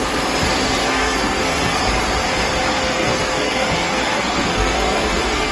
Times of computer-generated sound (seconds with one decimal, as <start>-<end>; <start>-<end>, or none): 0.8-1.8; 2.7-5.5